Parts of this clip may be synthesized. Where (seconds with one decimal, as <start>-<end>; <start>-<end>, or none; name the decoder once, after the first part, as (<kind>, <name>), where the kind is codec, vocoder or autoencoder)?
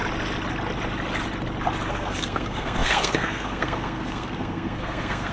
1.9-5.3 (codec, SNAC)